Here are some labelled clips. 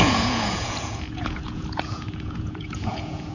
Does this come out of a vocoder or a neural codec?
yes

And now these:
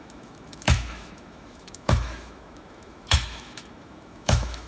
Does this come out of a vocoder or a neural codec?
yes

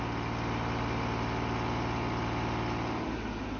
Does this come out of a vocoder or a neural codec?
no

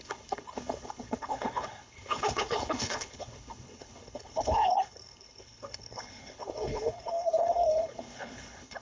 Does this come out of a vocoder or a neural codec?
yes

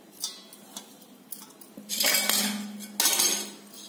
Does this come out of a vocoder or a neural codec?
no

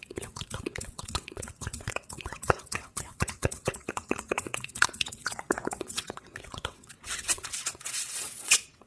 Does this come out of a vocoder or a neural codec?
yes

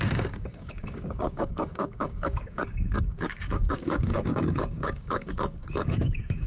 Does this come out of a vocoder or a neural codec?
yes